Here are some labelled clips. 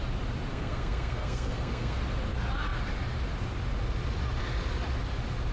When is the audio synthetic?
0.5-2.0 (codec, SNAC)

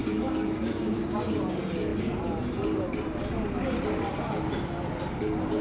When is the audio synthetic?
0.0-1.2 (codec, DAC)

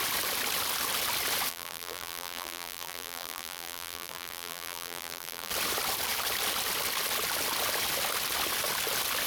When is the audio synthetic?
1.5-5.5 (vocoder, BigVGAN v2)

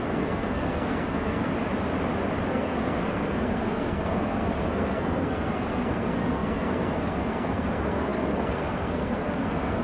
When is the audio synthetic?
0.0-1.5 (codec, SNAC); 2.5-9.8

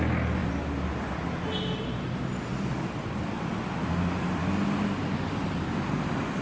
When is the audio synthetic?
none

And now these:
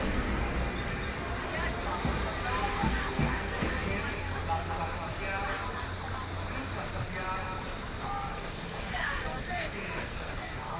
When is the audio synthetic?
0.0-0.4 (codec, SNAC); 2.7-3.7; 8.0-10.8

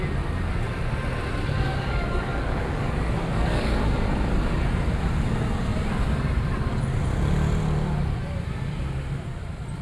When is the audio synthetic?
1.7-3.6 (codec, DAC)

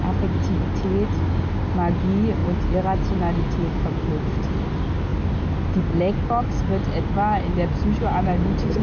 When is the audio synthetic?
none